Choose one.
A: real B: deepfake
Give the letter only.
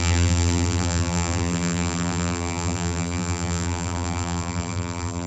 B